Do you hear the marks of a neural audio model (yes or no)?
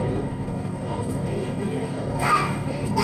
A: yes